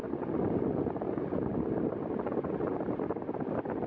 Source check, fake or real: real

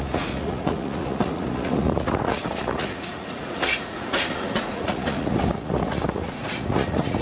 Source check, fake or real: fake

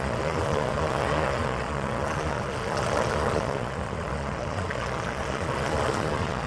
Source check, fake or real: fake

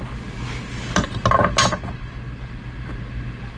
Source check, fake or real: real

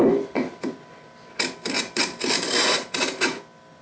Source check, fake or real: real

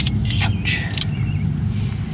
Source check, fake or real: real